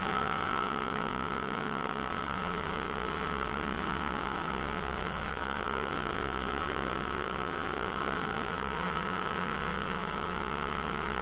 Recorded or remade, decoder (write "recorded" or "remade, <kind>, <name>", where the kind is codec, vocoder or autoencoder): remade, vocoder, WaveNeXt